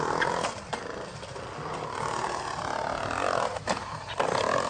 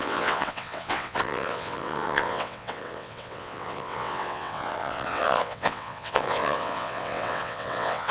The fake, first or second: second